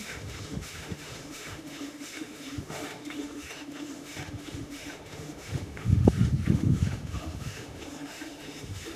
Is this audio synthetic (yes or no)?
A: yes